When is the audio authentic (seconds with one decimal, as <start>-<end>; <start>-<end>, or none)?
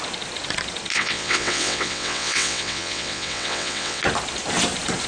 0.0-0.9; 4.0-5.1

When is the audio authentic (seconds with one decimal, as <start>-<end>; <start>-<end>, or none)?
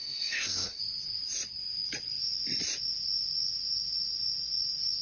0.8-5.0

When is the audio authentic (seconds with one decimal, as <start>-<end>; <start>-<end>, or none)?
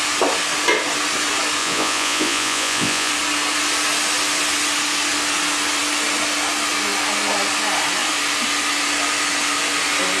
0.0-1.6; 3.1-10.2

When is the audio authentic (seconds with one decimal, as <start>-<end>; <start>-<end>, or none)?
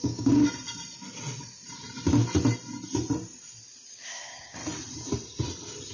0.4-3.9; 4.6-5.9